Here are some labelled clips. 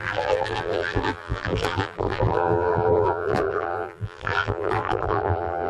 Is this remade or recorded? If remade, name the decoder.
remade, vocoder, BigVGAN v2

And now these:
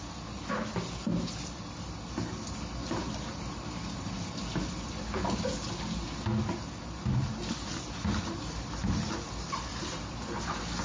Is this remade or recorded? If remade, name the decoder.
recorded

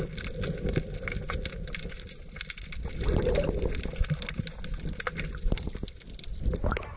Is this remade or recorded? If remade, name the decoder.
recorded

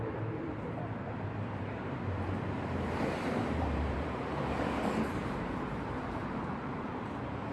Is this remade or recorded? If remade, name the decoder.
remade, vocoder, BigVGAN v2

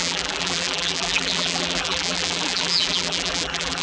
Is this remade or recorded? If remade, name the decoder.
remade, vocoder, BigVGAN v2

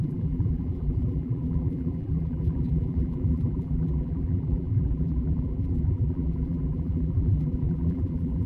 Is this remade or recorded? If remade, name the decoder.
remade, vocoder, BigVGAN v2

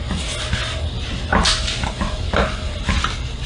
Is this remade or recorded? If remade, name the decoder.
recorded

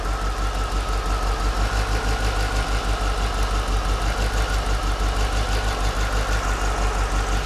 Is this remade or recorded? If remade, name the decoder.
recorded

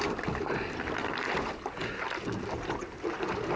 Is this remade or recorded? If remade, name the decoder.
recorded